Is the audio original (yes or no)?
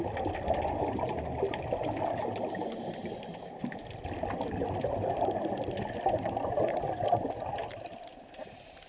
yes